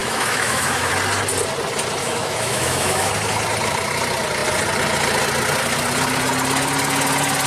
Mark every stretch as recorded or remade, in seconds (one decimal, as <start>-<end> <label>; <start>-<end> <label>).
0.0-0.9 remade; 0.9-2.0 recorded; 2.0-3.1 remade; 3.1-7.5 recorded